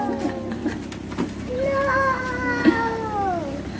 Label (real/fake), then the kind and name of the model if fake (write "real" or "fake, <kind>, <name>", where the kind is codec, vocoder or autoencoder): real